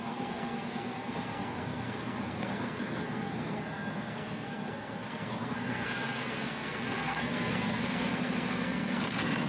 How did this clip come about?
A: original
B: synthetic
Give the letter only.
B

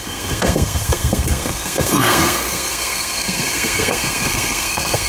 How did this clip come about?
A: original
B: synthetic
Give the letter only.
B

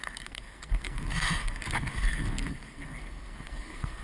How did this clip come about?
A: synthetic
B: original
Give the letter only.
A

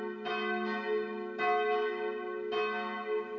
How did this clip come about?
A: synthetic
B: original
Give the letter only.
B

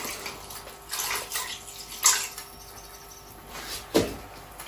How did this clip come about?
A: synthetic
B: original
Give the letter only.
B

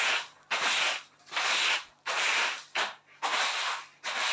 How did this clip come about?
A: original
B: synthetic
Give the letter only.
A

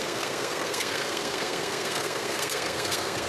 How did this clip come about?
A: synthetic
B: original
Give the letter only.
A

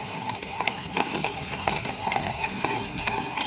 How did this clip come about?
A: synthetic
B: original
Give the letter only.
A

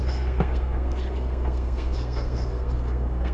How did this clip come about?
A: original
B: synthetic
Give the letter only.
B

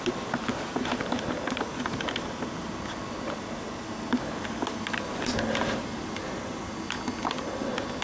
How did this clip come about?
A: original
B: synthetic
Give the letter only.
A